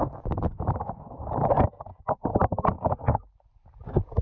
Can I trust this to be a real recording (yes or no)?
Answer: yes